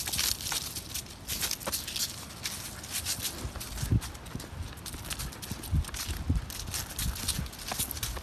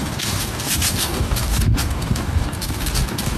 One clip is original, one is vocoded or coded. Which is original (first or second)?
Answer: first